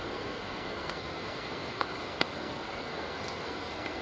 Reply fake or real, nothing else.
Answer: fake